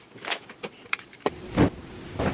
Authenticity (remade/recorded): recorded